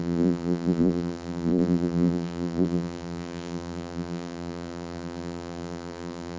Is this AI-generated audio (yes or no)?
yes